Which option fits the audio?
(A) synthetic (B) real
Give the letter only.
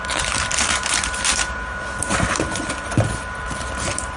A